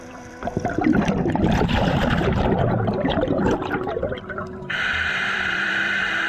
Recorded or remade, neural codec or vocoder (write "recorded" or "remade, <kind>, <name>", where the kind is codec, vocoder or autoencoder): remade, vocoder, BigVGAN v2